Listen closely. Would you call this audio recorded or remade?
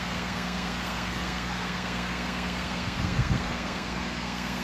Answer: remade